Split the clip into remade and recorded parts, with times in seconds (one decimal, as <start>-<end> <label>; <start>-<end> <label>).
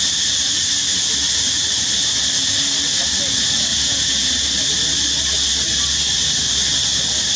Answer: 0.0-3.7 recorded; 3.7-4.3 remade; 4.3-7.4 recorded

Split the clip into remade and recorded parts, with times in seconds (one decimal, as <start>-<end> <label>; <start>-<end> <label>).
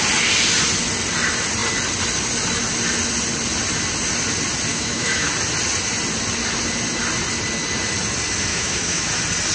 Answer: 0.0-4.7 recorded; 4.7-5.3 remade; 5.3-8.5 recorded; 8.5-9.1 remade; 9.1-9.5 recorded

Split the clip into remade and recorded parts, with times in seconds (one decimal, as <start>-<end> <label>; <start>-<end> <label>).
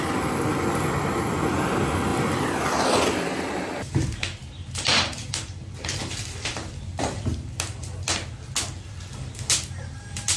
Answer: 0.0-2.1 recorded; 2.1-3.4 remade; 3.4-4.4 recorded; 4.4-7.3 remade; 7.3-10.4 recorded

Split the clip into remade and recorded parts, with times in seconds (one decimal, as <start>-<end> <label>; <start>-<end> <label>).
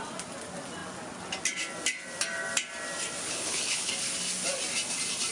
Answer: 0.0-3.2 recorded; 3.2-3.9 remade; 3.9-5.3 recorded